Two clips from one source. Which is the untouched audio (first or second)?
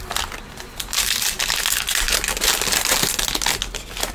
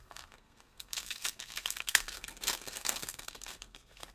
first